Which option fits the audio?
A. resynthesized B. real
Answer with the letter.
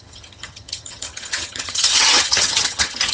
A